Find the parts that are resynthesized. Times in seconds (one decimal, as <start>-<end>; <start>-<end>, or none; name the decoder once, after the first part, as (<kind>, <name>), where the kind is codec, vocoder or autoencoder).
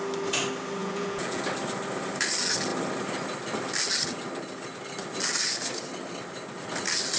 0.8-1.4 (vocoder, Vocos)